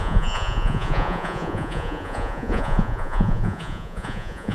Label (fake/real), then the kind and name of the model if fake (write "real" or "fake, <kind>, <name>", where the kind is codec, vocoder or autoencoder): fake, vocoder, Vocos